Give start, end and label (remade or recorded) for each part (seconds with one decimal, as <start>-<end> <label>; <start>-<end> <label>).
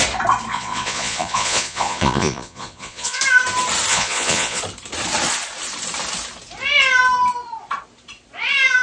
0.0-0.5 recorded; 0.5-3.2 remade; 3.2-3.9 recorded; 3.9-4.6 remade; 4.6-8.8 recorded